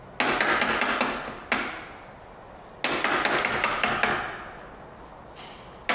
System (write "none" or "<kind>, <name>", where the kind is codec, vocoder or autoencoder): none